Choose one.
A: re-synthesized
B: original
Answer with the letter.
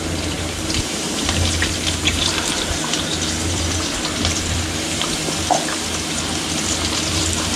A